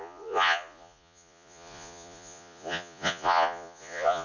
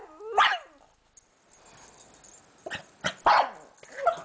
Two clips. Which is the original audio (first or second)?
second